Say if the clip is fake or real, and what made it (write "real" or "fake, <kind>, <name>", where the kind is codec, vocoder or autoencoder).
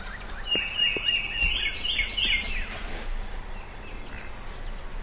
real